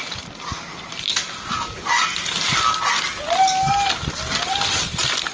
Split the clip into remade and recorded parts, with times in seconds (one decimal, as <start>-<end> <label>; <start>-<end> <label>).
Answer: 0.0-5.3 recorded